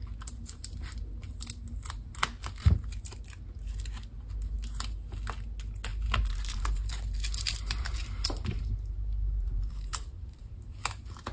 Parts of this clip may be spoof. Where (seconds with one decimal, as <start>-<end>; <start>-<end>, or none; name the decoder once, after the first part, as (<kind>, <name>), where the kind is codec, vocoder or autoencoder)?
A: 5.9-10.5 (vocoder, BigVGAN v2)